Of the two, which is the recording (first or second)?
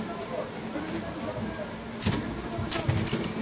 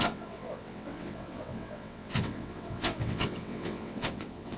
first